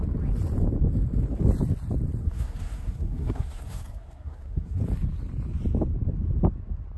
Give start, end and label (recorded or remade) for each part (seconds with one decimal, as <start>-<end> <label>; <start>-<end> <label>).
0.0-2.2 recorded; 2.2-4.8 remade; 4.8-7.0 recorded